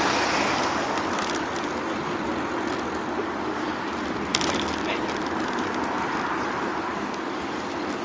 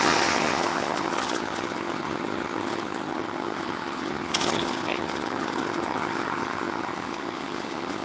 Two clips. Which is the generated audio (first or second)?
second